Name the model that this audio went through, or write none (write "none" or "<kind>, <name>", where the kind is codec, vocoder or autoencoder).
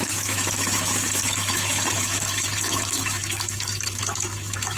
autoencoder, DAC-VAE